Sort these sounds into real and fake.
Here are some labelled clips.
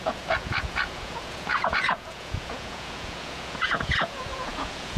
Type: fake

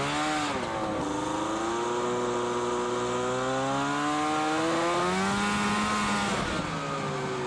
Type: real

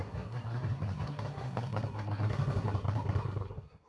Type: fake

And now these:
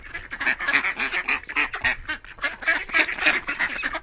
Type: real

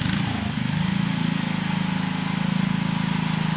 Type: real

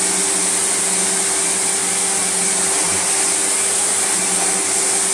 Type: real